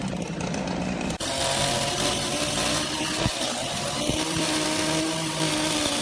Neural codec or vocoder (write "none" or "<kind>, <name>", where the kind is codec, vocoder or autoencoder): none